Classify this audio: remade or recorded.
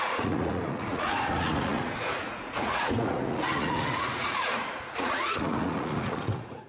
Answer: remade